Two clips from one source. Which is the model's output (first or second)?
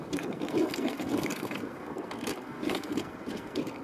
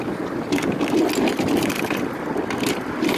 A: first